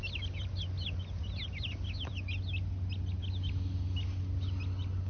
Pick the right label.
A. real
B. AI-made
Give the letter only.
A